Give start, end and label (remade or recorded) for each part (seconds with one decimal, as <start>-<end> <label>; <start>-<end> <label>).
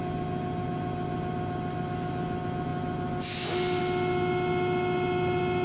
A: 0.0-5.6 recorded